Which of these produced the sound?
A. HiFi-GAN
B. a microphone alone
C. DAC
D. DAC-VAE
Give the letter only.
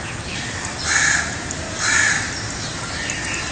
B